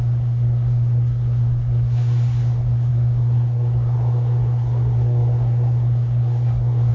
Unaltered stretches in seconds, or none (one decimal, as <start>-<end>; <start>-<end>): none